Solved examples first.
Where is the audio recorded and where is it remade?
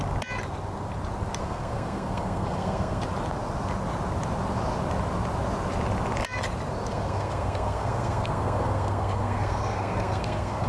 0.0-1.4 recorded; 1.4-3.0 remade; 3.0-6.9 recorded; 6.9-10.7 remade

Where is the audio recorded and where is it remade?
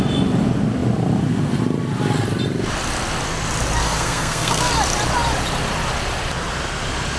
0.0-3.8 recorded; 3.8-4.7 remade; 4.7-7.2 recorded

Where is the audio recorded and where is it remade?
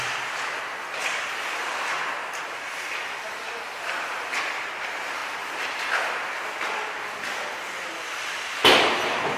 0.0-9.4 recorded